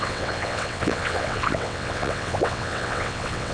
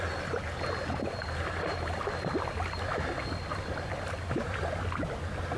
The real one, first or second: second